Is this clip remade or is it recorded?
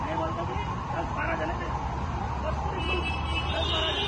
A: recorded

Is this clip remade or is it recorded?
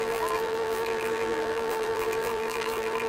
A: remade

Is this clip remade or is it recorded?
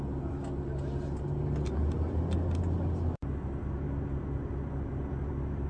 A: recorded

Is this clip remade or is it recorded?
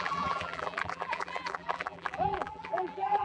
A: remade